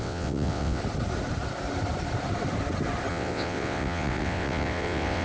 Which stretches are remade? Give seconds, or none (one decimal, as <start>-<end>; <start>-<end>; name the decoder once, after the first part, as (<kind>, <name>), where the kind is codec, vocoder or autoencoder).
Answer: 0.0-0.8 (vocoder, WaveNeXt); 3.1-5.2

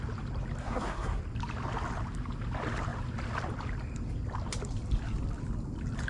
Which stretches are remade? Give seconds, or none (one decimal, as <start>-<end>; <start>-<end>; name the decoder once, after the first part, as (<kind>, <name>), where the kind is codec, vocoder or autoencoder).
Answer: 0.6-1.2 (codec, SNAC)